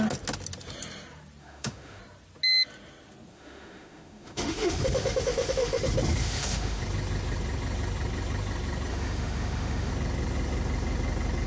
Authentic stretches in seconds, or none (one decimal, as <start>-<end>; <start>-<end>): 0.0-1.4; 2.0-3.3; 5.8-6.2; 6.8-8.9; 9.9-11.5